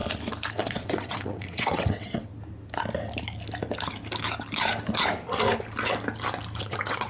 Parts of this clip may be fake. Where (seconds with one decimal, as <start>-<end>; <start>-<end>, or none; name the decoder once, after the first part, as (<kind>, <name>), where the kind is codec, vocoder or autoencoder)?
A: 0.5-2.3 (vocoder, WaveNeXt); 6.6-7.1